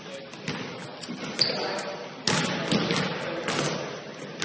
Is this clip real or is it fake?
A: real